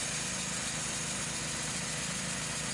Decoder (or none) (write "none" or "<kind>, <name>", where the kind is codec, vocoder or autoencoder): none